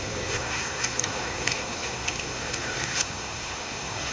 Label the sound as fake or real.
fake